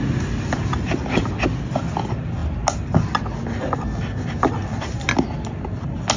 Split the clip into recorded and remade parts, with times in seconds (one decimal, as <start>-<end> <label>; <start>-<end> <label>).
0.0-6.2 recorded